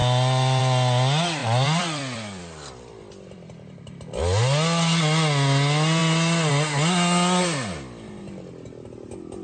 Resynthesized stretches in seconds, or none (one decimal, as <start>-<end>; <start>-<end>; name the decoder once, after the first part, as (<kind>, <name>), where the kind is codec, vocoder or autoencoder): 1.4-3.7 (vocoder, BigVGAN v2)